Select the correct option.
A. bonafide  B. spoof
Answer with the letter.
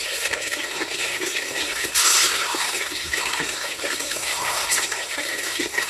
B